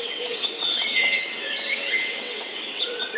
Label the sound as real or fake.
fake